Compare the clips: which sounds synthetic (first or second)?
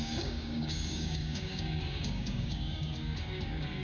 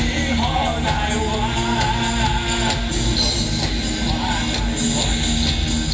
first